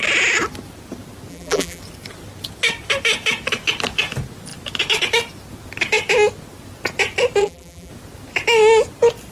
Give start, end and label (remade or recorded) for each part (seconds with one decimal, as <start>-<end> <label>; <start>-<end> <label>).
0.0-1.3 recorded; 1.3-1.8 remade; 1.8-7.4 recorded; 7.4-7.9 remade; 7.9-9.3 recorded